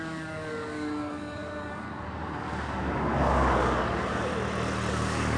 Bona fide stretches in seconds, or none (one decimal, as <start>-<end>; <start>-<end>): 4.3-4.9